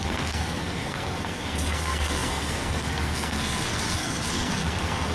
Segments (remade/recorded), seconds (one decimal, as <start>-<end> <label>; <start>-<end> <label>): 0.0-5.1 remade